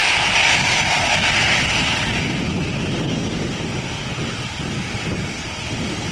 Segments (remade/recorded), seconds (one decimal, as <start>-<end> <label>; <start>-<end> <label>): 0.0-6.1 recorded